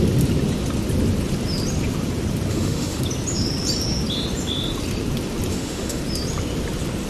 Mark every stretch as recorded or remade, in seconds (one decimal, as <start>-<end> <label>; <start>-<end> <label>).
0.0-2.5 recorded; 2.5-3.0 remade; 3.0-5.5 recorded; 5.5-6.0 remade; 6.0-7.1 recorded